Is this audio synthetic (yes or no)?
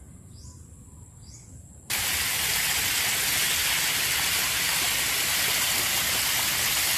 no